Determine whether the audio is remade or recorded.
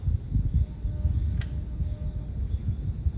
recorded